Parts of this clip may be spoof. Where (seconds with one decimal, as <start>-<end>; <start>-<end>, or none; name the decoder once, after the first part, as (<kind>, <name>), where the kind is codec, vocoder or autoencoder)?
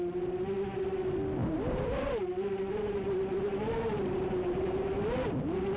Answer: 1.4-4.9 (vocoder, BigVGAN v2)